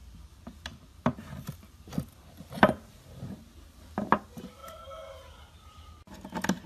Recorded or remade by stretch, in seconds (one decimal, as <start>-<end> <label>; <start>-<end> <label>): 0.0-4.6 remade; 4.6-6.3 recorded; 6.3-6.7 remade